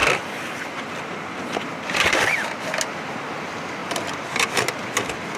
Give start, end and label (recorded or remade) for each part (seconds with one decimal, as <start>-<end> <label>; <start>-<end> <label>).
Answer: 0.0-5.4 recorded